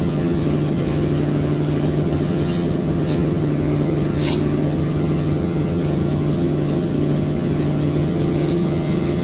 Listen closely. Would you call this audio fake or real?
fake